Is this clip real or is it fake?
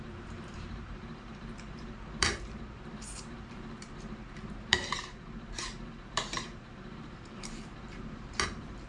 fake